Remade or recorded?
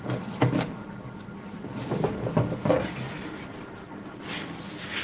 recorded